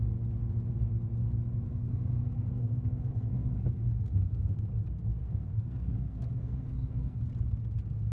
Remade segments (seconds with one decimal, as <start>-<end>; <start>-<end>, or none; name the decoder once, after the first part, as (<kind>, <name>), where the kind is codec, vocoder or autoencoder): 1.7-4.7 (codec, SNAC); 5.2-7.2

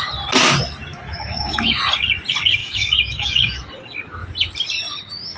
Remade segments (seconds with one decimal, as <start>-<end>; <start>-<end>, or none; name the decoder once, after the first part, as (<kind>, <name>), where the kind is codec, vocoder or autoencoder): 0.9-1.8 (autoencoder, DAC-VAE); 2.6-3.7

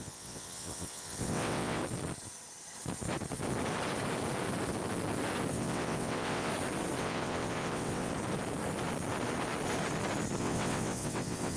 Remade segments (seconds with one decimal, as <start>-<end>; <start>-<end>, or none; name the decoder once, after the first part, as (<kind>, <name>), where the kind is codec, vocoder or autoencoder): 0.0-1.8 (vocoder, WaveNeXt); 5.5-6.5; 7.0-8.1; 10.4-11.6

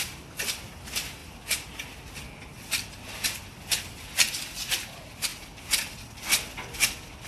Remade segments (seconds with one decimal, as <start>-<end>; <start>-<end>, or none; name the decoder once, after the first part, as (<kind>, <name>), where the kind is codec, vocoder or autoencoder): none

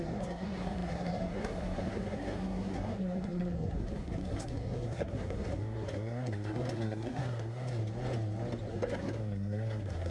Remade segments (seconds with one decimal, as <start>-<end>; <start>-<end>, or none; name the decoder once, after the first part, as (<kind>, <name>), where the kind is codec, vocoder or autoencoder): 0.0-7.8 (codec, SNAC); 8.7-10.1

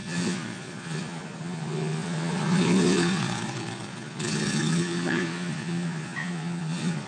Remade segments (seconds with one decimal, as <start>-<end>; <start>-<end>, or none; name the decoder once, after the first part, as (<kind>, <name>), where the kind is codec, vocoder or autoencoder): 0.0-7.1 (vocoder, Vocos)